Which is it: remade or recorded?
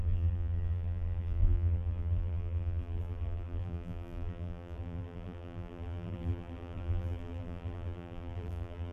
remade